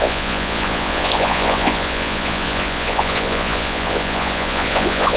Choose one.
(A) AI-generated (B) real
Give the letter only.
A